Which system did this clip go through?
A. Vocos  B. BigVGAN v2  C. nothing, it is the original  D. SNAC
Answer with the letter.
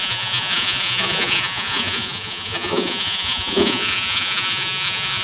A